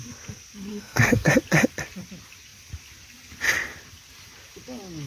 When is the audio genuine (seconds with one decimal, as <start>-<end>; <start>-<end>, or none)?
0.0-0.7; 1.3-5.1